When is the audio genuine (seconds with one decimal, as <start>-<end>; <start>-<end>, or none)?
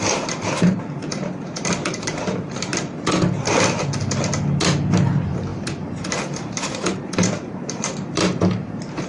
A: 2.7-5.1